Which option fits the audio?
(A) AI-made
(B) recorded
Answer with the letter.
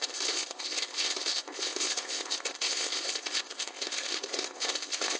A